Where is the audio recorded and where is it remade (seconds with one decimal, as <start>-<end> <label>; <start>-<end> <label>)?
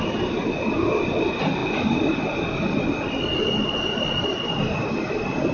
0.0-5.5 recorded